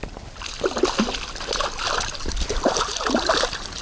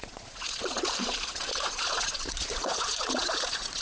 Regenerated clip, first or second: second